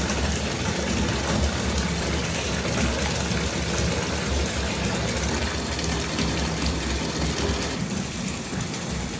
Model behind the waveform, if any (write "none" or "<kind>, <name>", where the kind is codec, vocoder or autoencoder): none